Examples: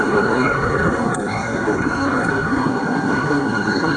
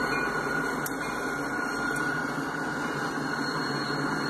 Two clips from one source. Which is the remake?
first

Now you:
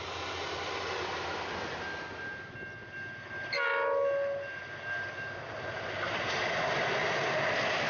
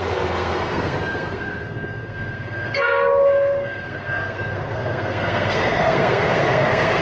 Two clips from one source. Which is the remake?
second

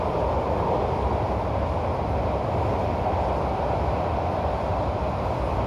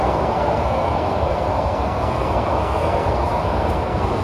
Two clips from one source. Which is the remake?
second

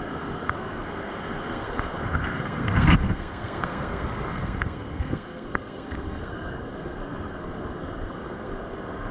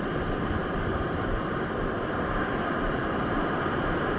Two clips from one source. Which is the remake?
first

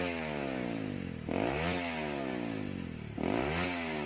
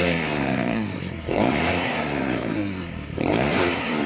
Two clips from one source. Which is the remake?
second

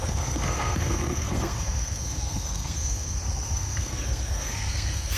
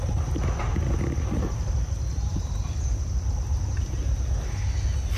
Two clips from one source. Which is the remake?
first